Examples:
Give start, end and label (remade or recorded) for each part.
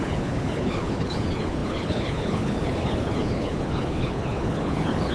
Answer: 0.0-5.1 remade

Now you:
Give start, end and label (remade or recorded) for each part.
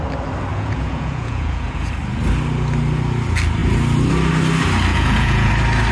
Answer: 0.0-0.5 recorded; 0.5-1.9 remade; 1.9-4.9 recorded; 4.9-5.5 remade; 5.5-5.9 recorded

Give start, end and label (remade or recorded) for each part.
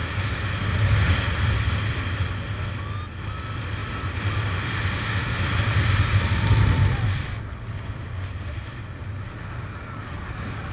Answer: 0.0-10.7 recorded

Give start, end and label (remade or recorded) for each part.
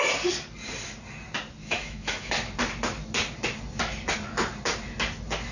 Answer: 0.0-1.6 recorded; 1.6-2.3 remade; 2.3-5.5 recorded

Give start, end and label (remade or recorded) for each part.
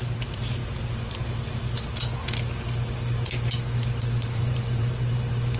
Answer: 0.0-0.6 remade; 0.6-4.0 recorded; 4.0-5.6 remade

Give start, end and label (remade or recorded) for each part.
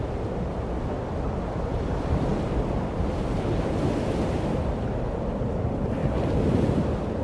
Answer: 0.0-2.3 remade; 2.3-4.5 recorded; 4.5-7.2 remade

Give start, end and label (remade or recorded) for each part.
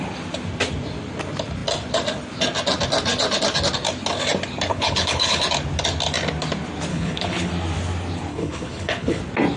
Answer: 0.0-4.7 recorded; 4.7-5.4 remade; 5.4-6.9 recorded; 6.9-7.5 remade; 7.5-8.3 recorded; 8.3-9.2 remade; 9.2-9.6 recorded